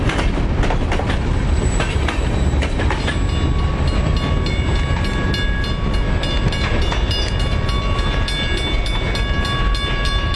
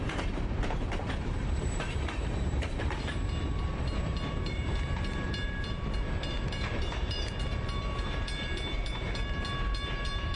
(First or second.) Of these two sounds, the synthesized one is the second